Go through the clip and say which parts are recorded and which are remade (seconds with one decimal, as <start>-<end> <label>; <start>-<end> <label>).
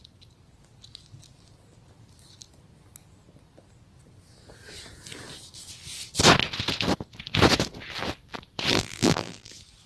0.0-8.7 recorded; 8.7-9.5 remade; 9.5-9.9 recorded